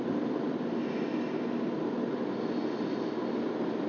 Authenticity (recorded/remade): recorded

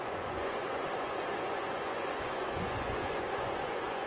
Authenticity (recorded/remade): remade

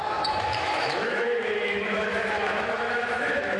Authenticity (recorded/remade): remade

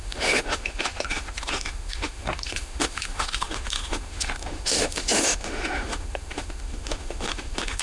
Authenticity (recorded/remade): remade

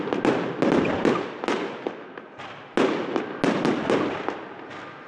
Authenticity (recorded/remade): recorded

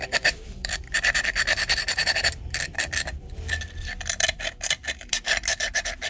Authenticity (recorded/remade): remade